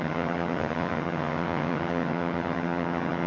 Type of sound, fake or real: fake